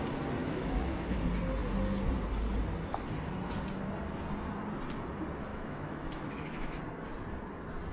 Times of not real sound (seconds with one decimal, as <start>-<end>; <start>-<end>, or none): 0.4-1.2; 5.5-6.8